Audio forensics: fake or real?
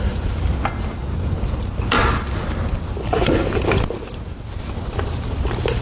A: real